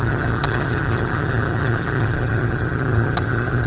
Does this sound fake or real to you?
fake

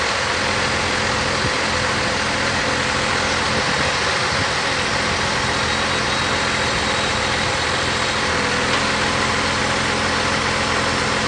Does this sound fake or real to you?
real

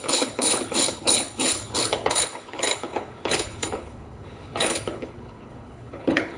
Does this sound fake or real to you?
fake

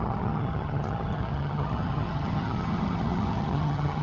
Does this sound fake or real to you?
fake